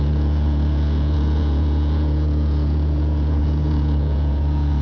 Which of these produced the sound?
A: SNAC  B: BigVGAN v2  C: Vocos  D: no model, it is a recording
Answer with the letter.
C